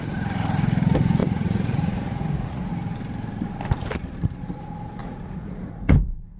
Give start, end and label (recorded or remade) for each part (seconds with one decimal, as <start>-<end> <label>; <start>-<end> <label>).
0.0-1.2 recorded; 1.2-2.7 remade; 2.7-5.0 recorded; 5.0-6.4 remade